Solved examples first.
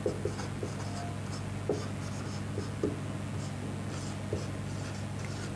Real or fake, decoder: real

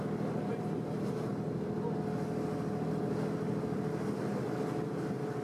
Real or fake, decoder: real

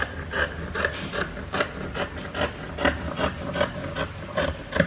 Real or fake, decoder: real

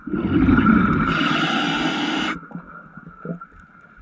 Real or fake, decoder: real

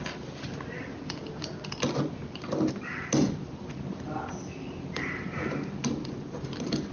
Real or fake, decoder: real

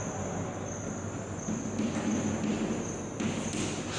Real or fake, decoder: real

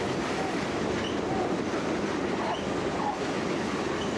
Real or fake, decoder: real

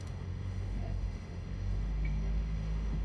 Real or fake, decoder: fake, autoencoder, DAC-VAE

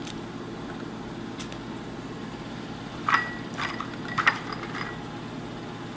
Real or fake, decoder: real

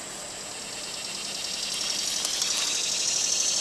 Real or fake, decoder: real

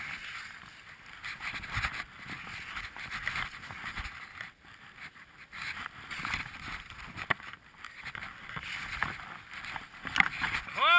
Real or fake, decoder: real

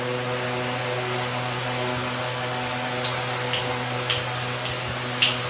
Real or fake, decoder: real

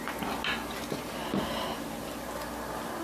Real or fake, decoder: real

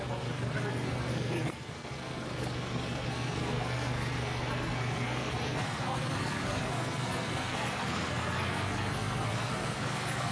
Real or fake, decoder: fake, codec, SNAC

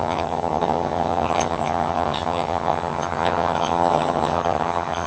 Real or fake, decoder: fake, vocoder, HiFi-GAN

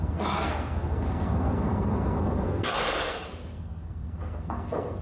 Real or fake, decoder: fake, codec, SNAC